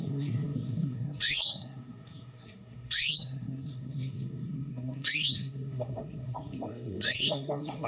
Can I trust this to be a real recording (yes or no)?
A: no